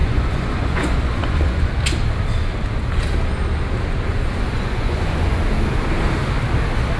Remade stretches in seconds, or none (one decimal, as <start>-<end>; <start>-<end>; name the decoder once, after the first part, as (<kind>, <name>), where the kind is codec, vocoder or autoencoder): 0.0-1.7 (vocoder, Vocos); 4.1-5.4